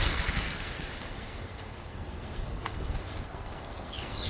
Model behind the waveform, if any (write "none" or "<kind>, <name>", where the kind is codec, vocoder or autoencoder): codec, SNAC